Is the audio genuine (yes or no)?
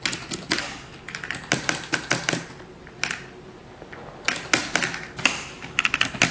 yes